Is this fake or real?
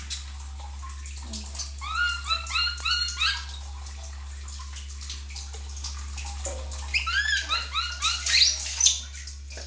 real